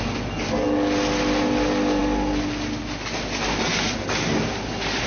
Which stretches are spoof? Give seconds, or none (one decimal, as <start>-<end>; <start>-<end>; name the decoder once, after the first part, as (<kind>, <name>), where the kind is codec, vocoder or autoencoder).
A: none